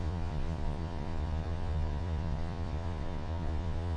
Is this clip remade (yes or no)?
yes